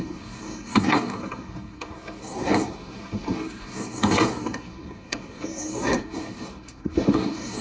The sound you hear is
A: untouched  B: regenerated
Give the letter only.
B